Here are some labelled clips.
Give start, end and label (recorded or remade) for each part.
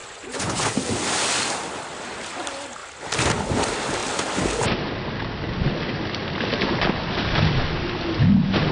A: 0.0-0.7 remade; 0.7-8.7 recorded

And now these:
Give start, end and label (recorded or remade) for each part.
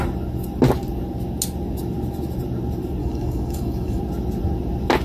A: 0.0-3.0 recorded; 3.0-4.0 remade; 4.0-5.0 recorded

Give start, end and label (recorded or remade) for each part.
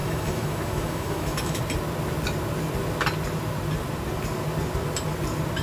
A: 0.0-1.6 remade; 1.6-5.6 recorded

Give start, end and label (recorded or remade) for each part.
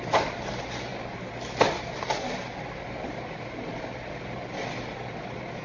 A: 0.0-5.6 recorded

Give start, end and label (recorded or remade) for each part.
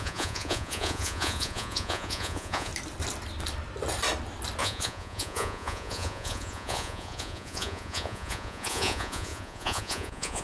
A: 0.0-2.7 remade; 2.7-4.6 recorded; 4.6-10.4 remade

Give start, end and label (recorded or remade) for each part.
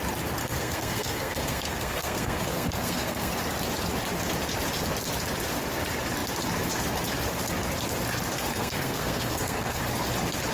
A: 0.0-0.4 recorded; 0.4-3.3 remade; 3.3-8.5 recorded; 8.5-9.8 remade; 9.8-10.5 recorded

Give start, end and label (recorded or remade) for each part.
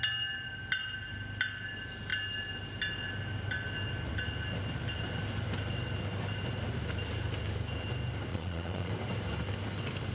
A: 0.0-8.3 recorded; 8.3-8.9 remade; 8.9-10.1 recorded